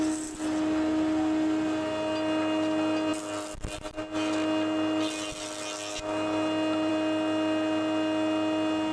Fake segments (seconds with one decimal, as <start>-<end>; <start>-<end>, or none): none